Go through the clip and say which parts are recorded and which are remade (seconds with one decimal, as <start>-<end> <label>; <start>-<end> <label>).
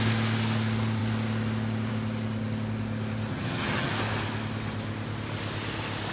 0.0-3.3 recorded; 3.3-3.9 remade; 3.9-6.1 recorded